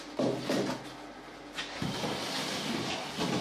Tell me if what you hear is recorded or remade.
recorded